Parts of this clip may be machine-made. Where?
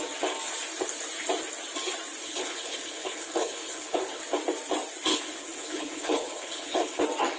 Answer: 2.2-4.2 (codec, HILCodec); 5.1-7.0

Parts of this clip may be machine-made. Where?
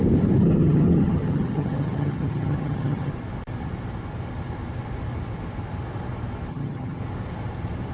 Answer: 0.4-3.1 (vocoder, HiFi-GAN); 6.5-7.0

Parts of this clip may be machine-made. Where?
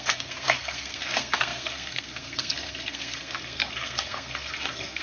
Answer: 0.0-5.0 (codec, SNAC)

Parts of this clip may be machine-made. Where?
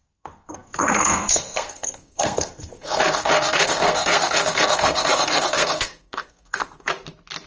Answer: 0.0-6.9 (codec, SNAC)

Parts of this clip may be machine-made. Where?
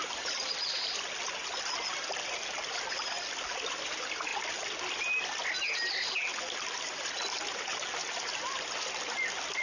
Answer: none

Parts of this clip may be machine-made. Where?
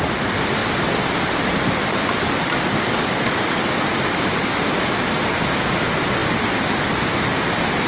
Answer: 0.6-5.3 (vocoder, BigVGAN v2)